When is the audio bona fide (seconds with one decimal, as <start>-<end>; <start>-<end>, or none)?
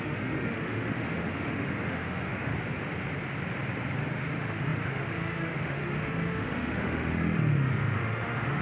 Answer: 2.5-4.1